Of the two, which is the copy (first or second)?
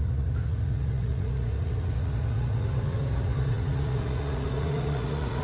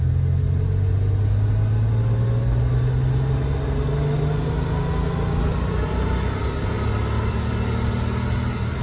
first